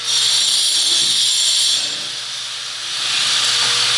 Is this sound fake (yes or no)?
no